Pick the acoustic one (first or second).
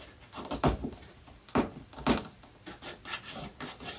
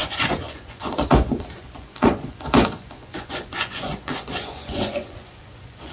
first